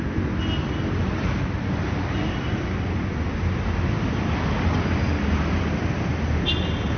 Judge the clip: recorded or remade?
recorded